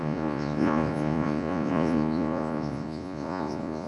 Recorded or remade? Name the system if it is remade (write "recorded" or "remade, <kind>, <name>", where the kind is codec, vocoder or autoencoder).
remade, vocoder, Vocos